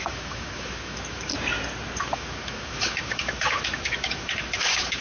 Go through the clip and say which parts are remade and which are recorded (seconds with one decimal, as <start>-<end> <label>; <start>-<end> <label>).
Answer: 0.0-1.3 remade; 1.3-2.0 recorded; 2.0-5.0 remade